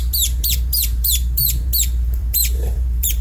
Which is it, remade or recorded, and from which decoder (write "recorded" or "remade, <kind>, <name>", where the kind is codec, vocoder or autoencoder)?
remade, vocoder, BigVGAN v2